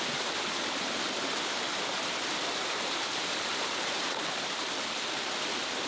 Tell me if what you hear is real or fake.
real